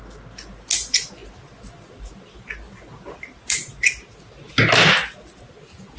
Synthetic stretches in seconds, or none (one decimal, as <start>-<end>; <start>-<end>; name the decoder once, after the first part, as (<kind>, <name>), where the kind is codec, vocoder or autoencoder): none